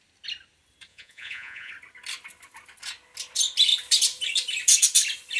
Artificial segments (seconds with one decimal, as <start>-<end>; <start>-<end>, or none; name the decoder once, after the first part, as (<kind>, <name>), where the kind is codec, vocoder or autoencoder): 0.9-1.7 (vocoder, Vocos)